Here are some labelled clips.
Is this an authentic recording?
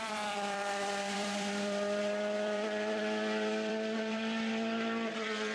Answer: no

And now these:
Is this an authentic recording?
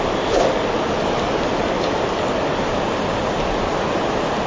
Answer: yes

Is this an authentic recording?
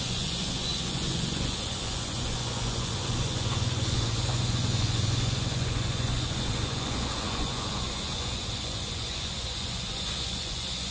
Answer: no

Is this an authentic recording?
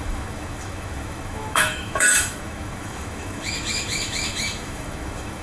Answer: no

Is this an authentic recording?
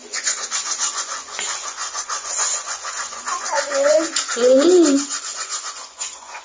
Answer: no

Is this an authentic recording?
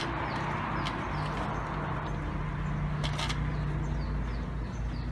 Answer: yes